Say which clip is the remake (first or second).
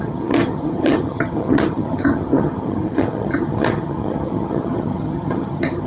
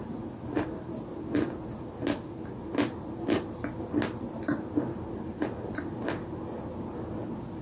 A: first